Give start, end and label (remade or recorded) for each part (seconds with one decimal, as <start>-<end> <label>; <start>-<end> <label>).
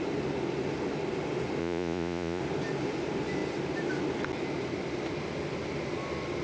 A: 0.0-1.6 recorded; 1.6-2.4 remade; 2.4-6.4 recorded